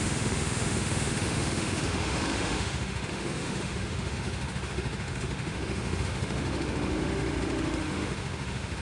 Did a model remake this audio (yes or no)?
yes